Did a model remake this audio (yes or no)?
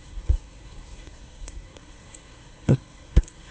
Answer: yes